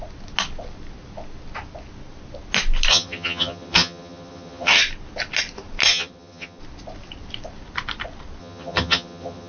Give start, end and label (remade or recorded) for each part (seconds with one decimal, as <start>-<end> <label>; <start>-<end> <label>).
0.0-2.9 recorded; 2.9-4.8 remade; 4.8-5.9 recorded; 5.9-6.6 remade; 6.6-8.4 recorded; 8.4-9.5 remade